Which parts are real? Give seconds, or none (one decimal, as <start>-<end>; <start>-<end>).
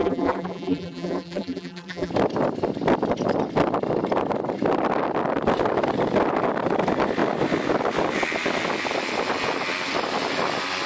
2.1-10.9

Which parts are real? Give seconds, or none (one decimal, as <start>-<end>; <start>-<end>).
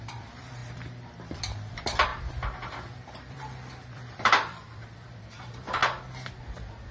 5.8-6.4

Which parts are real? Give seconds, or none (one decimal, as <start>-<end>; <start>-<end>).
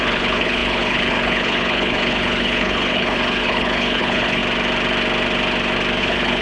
4.4-6.0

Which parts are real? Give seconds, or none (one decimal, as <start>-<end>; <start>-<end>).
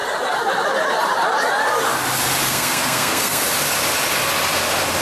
0.0-2.4; 3.4-5.0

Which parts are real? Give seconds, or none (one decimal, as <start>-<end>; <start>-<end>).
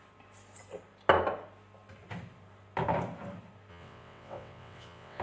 0.0-3.7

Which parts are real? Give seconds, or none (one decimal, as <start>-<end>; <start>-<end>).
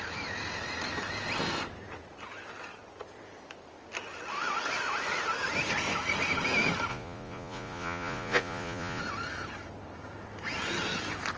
0.0-6.9; 9.0-11.4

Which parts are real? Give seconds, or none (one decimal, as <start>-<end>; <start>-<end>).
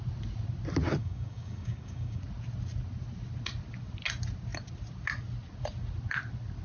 0.0-1.0; 2.2-6.6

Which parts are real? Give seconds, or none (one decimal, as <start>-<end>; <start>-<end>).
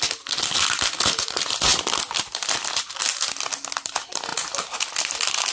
0.0-1.7; 2.8-5.5